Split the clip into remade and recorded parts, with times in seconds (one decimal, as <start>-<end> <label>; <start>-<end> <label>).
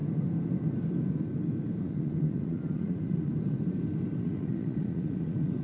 0.0-1.8 recorded; 1.8-3.3 remade; 3.3-4.2 recorded; 4.2-5.6 remade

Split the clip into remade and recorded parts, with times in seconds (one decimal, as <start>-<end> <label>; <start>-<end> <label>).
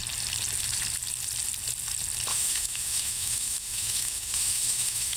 0.0-2.3 recorded; 2.3-5.2 remade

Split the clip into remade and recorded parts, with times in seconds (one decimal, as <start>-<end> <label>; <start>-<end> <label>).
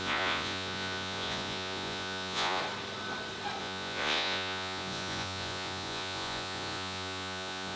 0.0-2.6 remade; 2.6-3.6 recorded; 3.6-7.8 remade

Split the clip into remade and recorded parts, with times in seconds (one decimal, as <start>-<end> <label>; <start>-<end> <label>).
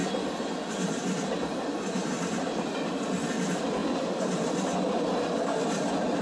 0.0-6.2 recorded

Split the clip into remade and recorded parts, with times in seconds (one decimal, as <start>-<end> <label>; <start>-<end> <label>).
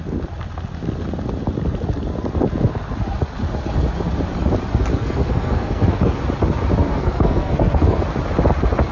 0.0-4.9 recorded; 4.9-6.2 remade; 6.2-6.8 recorded; 6.8-8.0 remade; 8.0-8.9 recorded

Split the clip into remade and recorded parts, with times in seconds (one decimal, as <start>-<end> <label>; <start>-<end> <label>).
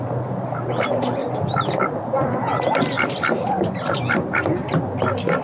0.0-1.2 remade; 1.2-1.9 recorded; 1.9-2.5 remade; 2.5-3.9 recorded; 3.9-4.6 remade; 4.6-5.4 recorded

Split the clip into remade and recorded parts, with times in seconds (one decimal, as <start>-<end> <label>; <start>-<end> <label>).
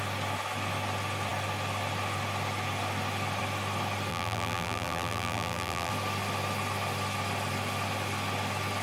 0.0-4.1 recorded; 4.1-5.9 remade; 5.9-8.8 recorded